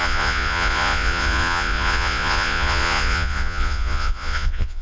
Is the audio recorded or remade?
remade